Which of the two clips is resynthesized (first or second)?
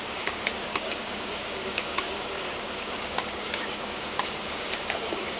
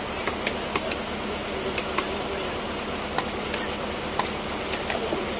first